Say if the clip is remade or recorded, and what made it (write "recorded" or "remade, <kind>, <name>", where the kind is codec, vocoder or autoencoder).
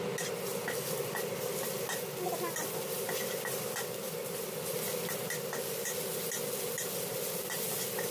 recorded